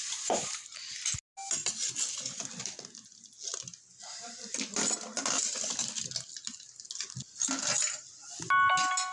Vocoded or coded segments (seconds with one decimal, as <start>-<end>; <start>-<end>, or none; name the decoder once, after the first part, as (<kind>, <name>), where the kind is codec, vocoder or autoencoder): none